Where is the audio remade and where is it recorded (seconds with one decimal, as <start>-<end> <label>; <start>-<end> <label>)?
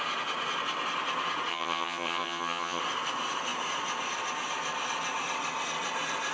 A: 0.0-1.5 recorded; 1.5-2.8 remade; 2.8-6.3 recorded